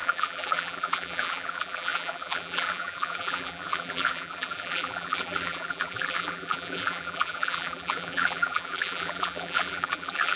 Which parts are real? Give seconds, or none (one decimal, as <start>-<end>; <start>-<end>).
none